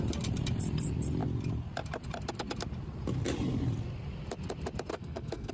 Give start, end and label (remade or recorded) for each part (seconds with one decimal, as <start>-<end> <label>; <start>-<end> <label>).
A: 0.0-4.9 recorded; 4.9-5.5 remade